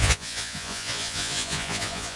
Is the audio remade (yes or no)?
yes